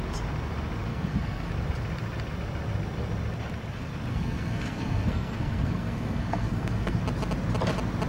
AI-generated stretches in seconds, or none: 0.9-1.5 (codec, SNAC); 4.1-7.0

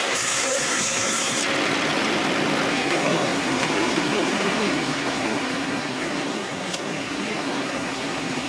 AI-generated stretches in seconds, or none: 0.0-1.4 (codec, SNAC); 2.7-8.5

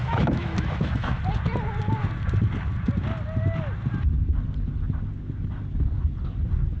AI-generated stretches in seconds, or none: 0.0-1.2 (autoencoder, DAC-VAE)

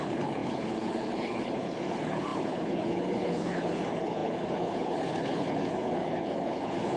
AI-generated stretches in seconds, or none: 0.0-7.0 (codec, HILCodec)

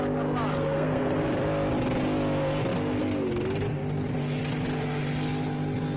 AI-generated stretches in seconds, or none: 0.5-1.2 (codec, SNAC)

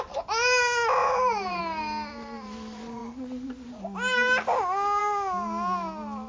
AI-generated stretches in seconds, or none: 1.0-1.6 (vocoder, BigVGAN v2)

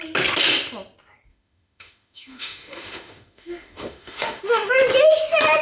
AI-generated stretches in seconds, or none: 1.3-4.7 (autoencoder, DAC-VAE)